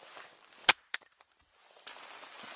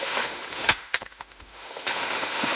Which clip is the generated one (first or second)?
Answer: second